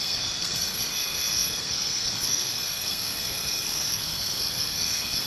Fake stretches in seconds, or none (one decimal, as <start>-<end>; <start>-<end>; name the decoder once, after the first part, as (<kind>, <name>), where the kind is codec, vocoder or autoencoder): 0.0-5.3 (codec, SNAC)